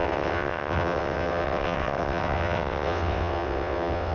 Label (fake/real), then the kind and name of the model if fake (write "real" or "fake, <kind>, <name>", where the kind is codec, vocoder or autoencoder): fake, vocoder, WaveNeXt